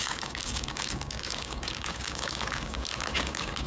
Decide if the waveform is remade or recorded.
remade